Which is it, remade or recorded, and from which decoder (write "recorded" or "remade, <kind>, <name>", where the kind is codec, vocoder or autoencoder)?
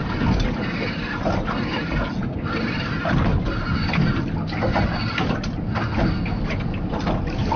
recorded